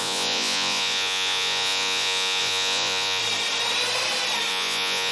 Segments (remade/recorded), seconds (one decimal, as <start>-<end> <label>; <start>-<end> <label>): 0.0-3.2 remade; 3.2-4.5 recorded; 4.5-5.1 remade